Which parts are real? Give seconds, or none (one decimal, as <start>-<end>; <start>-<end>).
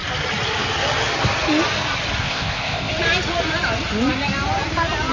0.0-2.2; 2.9-5.1